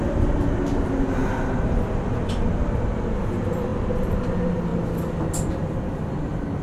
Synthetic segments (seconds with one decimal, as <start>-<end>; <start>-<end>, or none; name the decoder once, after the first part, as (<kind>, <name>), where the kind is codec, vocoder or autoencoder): none